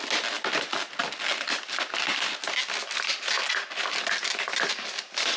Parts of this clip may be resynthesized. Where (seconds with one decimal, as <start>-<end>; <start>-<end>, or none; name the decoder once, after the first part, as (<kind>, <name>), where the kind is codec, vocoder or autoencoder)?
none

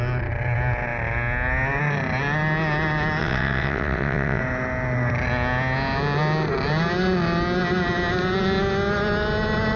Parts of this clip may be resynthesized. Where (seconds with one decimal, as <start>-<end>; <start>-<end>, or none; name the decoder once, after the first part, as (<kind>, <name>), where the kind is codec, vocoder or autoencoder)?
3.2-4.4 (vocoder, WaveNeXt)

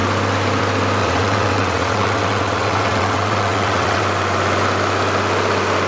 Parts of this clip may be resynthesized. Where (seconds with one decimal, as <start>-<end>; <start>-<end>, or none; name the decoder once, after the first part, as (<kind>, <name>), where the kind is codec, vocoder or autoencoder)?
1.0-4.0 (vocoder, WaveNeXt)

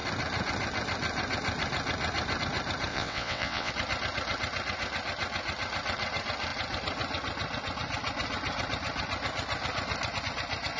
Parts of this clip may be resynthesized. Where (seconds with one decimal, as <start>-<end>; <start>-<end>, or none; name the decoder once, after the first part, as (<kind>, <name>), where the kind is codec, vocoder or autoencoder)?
2.9-3.7 (vocoder, WaveNeXt)

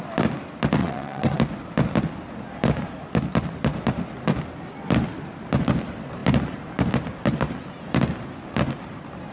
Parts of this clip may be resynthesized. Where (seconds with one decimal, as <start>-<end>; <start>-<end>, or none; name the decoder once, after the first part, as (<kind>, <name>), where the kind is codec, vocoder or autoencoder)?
0.8-1.4 (vocoder, WaveNeXt)

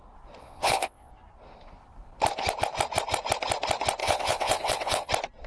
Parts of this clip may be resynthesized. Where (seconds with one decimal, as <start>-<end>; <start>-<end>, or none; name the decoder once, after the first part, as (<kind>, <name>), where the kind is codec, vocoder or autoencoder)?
0.4-1.1 (vocoder, WaveNeXt); 4.0-5.1